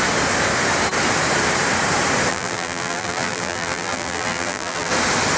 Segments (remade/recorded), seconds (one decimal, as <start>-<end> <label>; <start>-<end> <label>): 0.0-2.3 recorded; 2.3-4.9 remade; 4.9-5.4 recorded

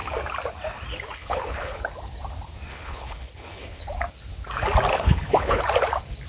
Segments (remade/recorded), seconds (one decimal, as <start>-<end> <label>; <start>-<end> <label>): 0.0-1.2 recorded; 1.2-1.8 remade; 1.8-2.7 recorded; 2.7-3.9 remade; 3.9-4.9 recorded; 4.9-5.6 remade; 5.6-6.3 recorded

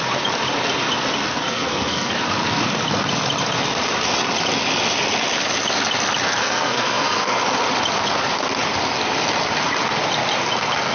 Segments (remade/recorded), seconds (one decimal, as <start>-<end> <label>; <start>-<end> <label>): 0.0-1.4 recorded; 1.4-2.1 remade; 2.1-6.4 recorded; 6.4-7.4 remade; 7.4-10.9 recorded